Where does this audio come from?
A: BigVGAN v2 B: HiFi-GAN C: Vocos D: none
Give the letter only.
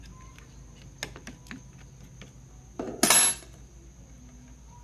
D